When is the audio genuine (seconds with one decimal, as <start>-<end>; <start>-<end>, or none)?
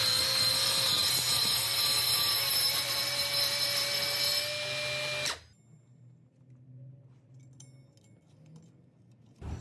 0.0-1.0; 2.9-9.6